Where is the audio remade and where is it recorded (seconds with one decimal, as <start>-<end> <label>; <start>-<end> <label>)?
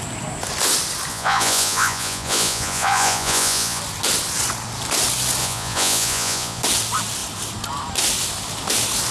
0.0-1.1 recorded; 1.1-3.8 remade; 3.8-5.4 recorded; 5.4-6.6 remade; 6.6-9.1 recorded